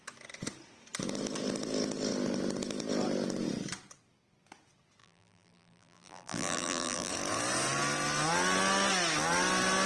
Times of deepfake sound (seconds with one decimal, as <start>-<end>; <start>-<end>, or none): 5.0-7.1